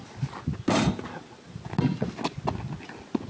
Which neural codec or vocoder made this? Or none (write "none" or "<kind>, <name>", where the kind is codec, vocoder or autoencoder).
none